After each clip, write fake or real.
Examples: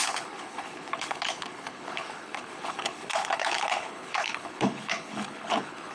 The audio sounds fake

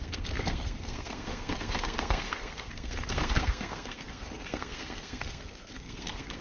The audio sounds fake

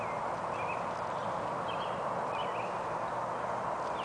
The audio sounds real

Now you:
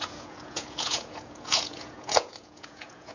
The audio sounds fake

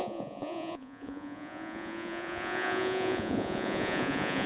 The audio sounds fake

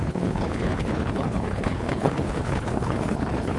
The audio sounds fake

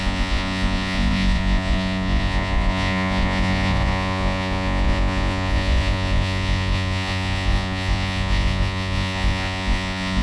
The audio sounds fake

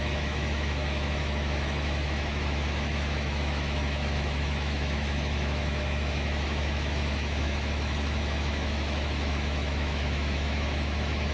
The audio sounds fake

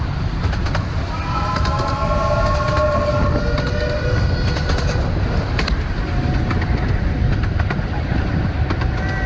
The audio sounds real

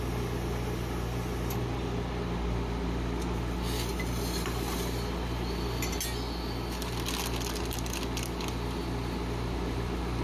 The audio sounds real